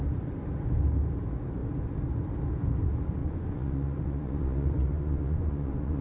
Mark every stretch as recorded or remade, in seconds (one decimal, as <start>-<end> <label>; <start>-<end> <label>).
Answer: 0.0-3.2 recorded; 3.2-6.0 remade